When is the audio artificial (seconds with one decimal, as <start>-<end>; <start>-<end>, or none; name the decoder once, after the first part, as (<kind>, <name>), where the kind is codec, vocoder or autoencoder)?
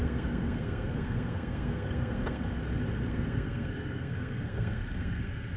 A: 0.0-2.4 (codec, SNAC); 3.1-5.6